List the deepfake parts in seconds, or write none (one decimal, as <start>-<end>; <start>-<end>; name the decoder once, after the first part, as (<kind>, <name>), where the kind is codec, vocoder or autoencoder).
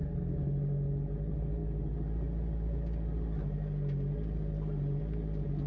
none